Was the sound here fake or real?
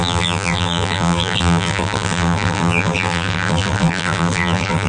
fake